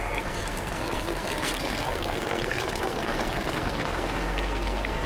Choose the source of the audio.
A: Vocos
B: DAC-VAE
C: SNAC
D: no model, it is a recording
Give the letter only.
C